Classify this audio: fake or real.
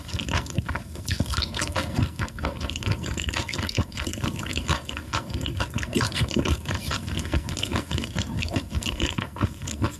fake